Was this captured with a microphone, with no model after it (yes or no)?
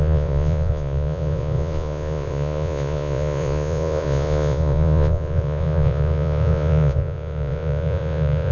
no